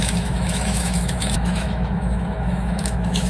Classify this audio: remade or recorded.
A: remade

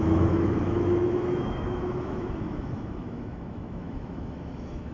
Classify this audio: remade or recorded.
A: remade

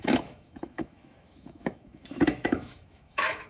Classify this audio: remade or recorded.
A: remade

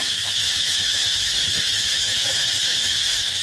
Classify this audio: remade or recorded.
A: remade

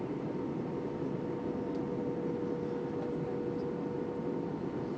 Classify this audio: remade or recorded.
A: recorded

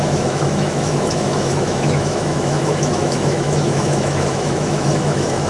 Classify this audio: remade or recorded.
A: remade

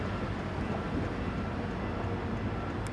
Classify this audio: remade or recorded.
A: recorded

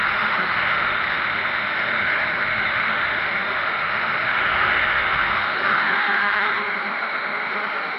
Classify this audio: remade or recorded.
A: remade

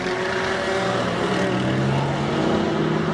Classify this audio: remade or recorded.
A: recorded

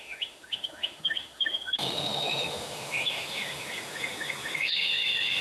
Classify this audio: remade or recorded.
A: remade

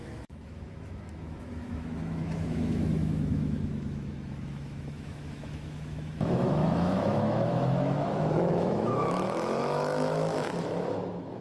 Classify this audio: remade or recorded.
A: remade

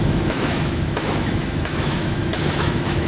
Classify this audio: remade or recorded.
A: remade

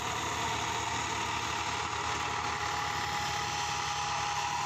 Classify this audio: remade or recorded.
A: recorded